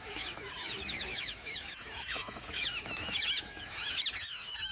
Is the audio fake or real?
fake